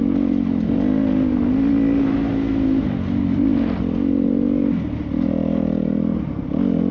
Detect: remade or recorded recorded